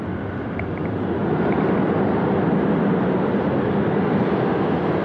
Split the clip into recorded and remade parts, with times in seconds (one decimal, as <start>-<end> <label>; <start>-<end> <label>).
0.0-5.0 recorded